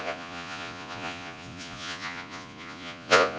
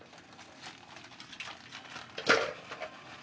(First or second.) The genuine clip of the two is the second